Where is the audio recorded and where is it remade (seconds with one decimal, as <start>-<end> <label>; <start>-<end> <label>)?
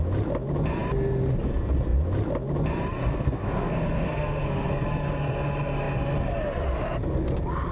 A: 0.0-3.1 recorded; 3.1-4.7 remade; 4.7-7.7 recorded